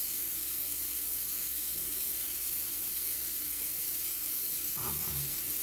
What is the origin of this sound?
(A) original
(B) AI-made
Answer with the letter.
B